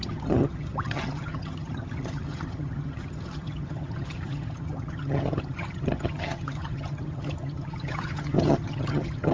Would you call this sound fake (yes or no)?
yes